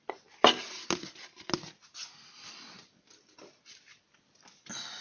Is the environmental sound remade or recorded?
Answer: recorded